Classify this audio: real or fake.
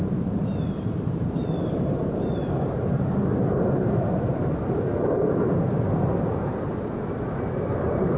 fake